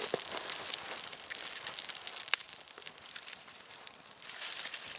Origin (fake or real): fake